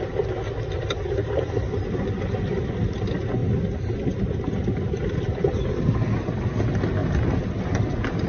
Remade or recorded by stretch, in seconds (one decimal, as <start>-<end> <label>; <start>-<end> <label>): 0.0-8.3 recorded